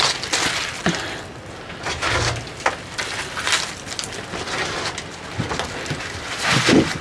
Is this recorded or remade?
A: recorded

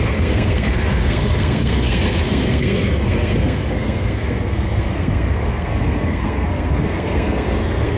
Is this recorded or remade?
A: remade